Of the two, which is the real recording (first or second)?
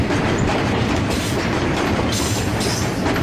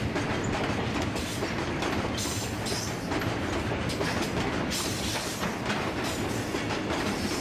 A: second